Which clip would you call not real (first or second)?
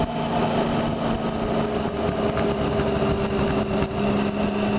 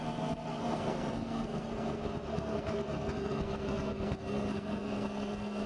second